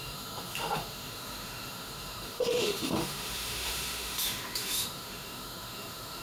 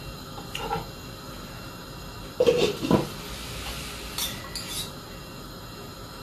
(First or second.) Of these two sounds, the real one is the second